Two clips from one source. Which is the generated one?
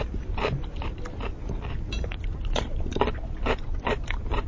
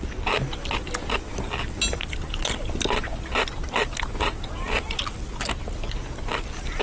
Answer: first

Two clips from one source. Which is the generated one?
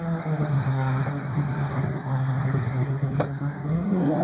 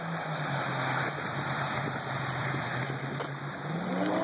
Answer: first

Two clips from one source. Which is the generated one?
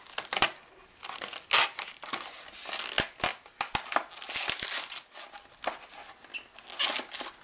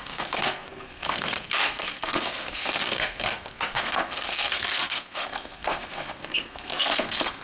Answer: second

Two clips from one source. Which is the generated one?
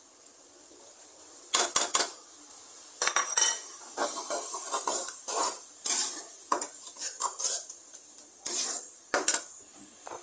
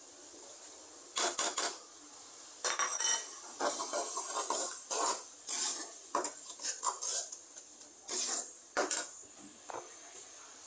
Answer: first